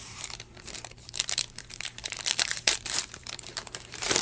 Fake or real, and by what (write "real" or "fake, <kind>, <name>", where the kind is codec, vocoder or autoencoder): fake, vocoder, BigVGAN v2